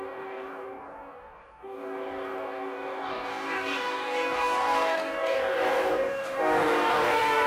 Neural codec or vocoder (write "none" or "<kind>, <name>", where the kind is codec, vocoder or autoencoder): codec, DAC